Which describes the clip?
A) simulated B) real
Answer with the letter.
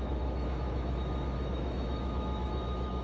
A